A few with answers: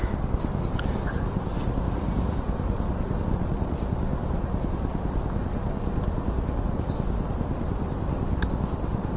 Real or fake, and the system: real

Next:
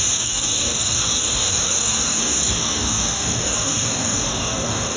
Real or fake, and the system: fake, codec, DAC